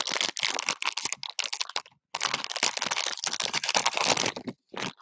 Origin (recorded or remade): recorded